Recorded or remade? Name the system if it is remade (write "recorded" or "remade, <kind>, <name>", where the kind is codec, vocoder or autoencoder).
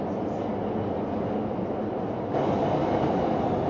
recorded